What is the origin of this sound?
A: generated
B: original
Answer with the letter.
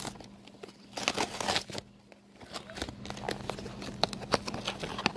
B